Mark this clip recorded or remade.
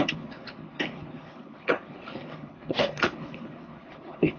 remade